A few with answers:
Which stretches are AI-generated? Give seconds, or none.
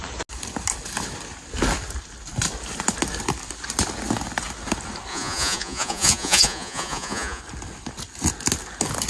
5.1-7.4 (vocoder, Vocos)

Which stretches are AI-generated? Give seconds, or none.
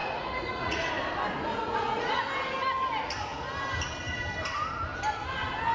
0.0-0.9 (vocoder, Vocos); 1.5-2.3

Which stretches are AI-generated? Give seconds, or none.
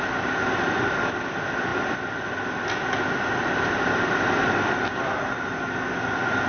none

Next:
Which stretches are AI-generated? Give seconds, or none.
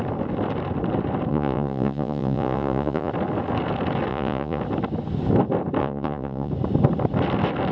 1.3-3.1 (vocoder, Vocos); 4.1-4.6; 5.8-6.5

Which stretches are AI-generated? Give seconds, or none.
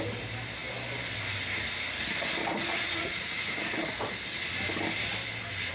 2.5-4.1 (vocoder, Vocos)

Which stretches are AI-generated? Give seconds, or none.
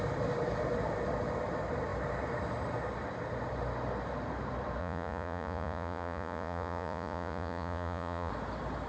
4.8-8.3 (vocoder, Vocos)